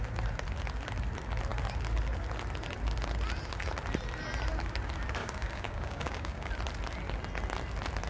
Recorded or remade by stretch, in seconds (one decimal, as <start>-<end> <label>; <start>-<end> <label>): 0.0-5.2 recorded; 5.2-6.5 remade; 6.5-8.1 recorded